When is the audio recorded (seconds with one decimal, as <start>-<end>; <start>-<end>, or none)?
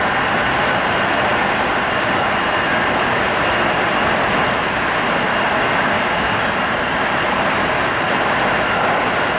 0.0-5.3; 6.4-9.4